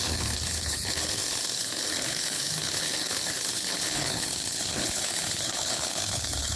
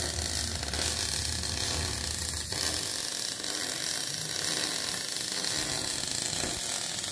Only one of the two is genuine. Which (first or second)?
second